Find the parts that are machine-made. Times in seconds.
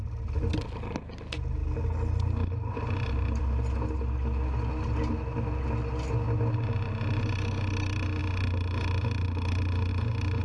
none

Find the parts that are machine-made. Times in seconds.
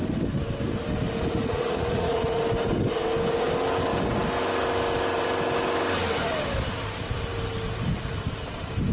1.4-2.4 (vocoder, Vocos)